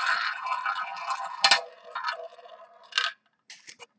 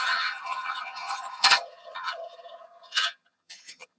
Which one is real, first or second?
first